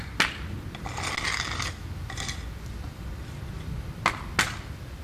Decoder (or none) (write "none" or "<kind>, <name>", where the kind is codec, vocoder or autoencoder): none